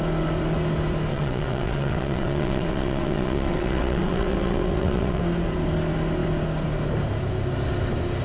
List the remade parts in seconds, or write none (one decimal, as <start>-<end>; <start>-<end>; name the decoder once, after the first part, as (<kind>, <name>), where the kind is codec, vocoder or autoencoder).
1.1-5.2 (vocoder, WaveNeXt)